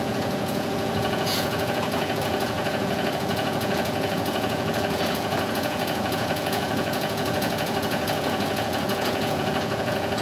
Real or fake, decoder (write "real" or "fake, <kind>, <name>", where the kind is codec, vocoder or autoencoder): fake, vocoder, Vocos